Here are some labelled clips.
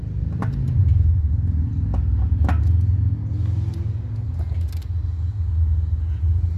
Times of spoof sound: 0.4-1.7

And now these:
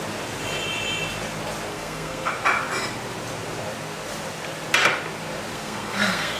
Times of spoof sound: 1.7-2.3; 5.5-6.4

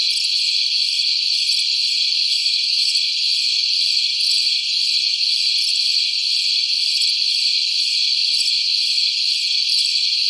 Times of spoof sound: 2.3-2.9

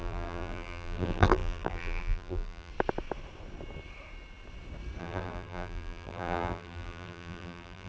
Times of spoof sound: 0.0-2.7; 5.0-7.9

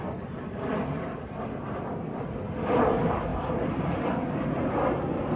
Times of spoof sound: none

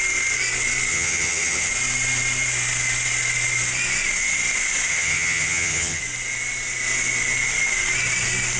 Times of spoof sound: 0.9-1.7; 4.9-6.0

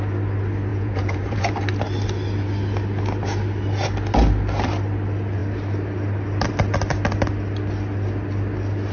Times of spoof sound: 0.7-1.5

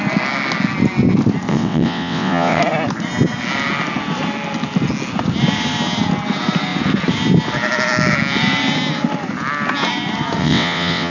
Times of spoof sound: 1.5-2.6; 10.4-11.1